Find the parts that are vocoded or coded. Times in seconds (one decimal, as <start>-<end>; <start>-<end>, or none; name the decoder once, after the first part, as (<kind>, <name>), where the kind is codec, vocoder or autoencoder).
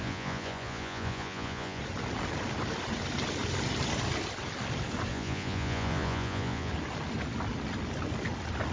0.0-1.8 (vocoder, Vocos); 5.1-6.7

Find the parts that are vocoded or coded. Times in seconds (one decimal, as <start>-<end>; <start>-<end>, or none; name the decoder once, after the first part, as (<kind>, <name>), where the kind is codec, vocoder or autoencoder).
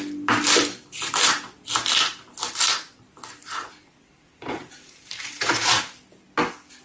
3.4-5.8 (vocoder, Vocos)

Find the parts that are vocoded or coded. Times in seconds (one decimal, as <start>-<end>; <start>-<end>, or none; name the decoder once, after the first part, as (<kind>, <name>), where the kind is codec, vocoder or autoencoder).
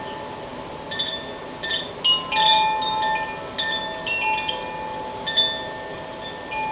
none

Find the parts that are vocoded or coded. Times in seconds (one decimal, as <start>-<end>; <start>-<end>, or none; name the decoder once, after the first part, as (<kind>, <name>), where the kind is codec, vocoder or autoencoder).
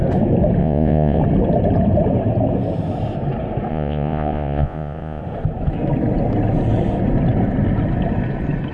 0.6-1.2 (vocoder, Vocos); 3.7-5.2